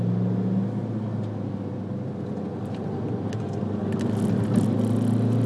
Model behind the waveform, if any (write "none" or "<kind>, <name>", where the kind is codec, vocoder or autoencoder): none